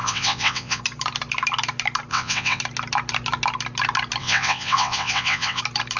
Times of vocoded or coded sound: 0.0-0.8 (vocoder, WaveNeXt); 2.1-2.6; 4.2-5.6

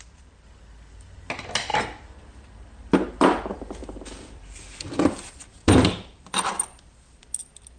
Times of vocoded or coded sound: 3.8-4.9 (vocoder, BigVGAN v2); 5.5-6.5

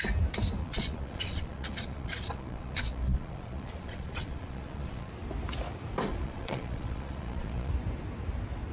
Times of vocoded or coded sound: 0.6-5.1 (vocoder, Vocos); 6.1-7.7

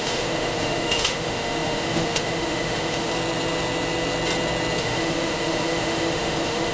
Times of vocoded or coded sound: 0.0-3.1 (autoencoder, DAC-VAE); 4.8-6.7

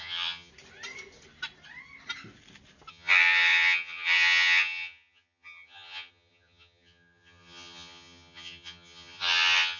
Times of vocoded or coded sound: 0.0-0.5 (vocoder, HiFi-GAN); 2.9-9.8

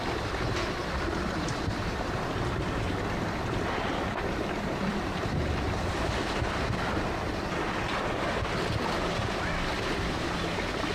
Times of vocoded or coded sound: 0.8-5.9 (vocoder, BigVGAN v2)

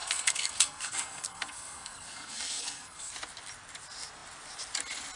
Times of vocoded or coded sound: 0.0-3.1 (codec, SNAC)

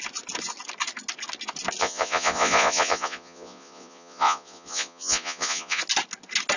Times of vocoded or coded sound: 1.8-5.8 (vocoder, Vocos)